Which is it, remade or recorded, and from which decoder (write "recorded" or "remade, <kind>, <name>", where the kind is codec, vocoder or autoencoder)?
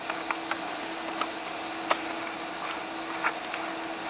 recorded